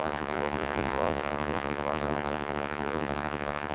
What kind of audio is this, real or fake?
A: fake